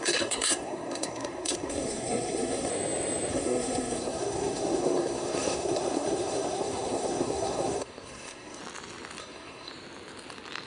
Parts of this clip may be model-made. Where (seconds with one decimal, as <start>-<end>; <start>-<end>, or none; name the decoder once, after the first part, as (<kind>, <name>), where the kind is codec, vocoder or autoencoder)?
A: 0.0-2.7 (codec, SNAC); 3.3-8.6; 9.2-9.7